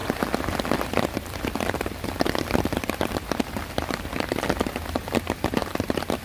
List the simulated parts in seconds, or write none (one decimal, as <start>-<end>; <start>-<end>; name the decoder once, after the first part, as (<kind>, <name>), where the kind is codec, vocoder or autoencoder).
0.0-3.7 (vocoder, BigVGAN v2); 5.6-6.2